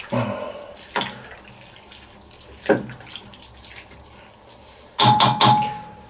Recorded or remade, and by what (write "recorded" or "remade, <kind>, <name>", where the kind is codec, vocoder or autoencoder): recorded